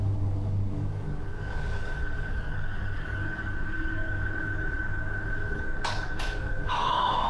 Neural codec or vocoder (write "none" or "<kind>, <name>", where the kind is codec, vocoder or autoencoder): codec, DAC